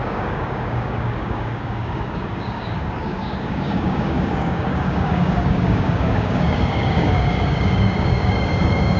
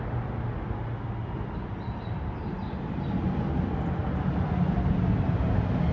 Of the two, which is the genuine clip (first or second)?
second